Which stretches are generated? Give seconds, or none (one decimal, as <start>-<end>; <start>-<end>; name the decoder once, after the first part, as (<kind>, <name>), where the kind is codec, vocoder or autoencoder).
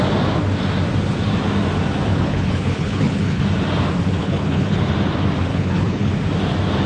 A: 2.1-3.4 (codec, HILCodec); 4.2-4.9; 5.5-6.1